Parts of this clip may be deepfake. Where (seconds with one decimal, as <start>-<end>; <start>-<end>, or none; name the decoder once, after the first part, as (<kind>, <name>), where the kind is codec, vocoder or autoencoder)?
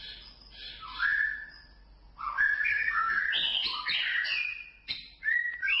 2.7-3.2 (codec, SNAC)